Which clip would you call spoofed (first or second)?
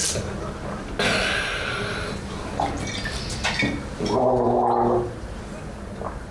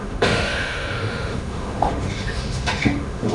second